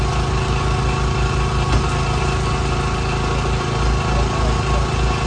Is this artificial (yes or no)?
no